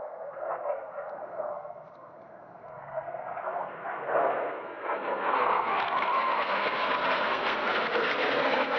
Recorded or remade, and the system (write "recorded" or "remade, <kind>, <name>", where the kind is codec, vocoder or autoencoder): remade, codec, SNAC